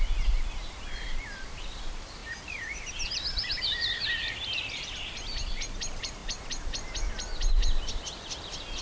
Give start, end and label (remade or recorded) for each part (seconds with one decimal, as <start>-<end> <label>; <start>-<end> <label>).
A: 0.0-8.8 remade